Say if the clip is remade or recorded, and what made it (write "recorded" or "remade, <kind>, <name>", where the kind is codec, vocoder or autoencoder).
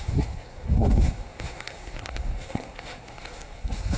remade, codec, SNAC